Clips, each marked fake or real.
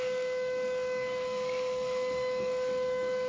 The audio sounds fake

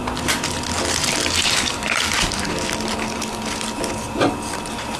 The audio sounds real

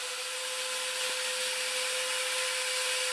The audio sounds real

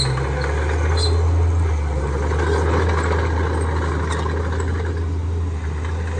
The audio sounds real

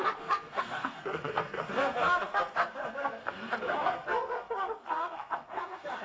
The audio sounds fake